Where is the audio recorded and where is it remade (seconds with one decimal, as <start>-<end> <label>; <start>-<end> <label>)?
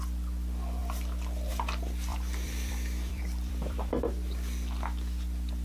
0.0-2.1 recorded; 2.1-3.9 remade; 3.9-5.6 recorded